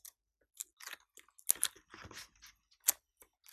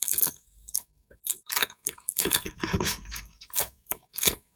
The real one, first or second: first